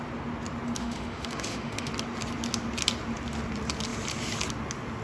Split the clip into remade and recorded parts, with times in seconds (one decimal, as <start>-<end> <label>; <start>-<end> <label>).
0.0-0.8 recorded; 0.8-1.9 remade; 1.9-5.0 recorded